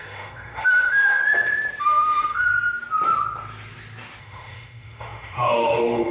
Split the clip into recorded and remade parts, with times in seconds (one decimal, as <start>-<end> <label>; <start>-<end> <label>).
0.0-1.2 remade; 1.2-1.8 recorded; 1.8-2.5 remade; 2.5-4.2 recorded; 4.2-6.1 remade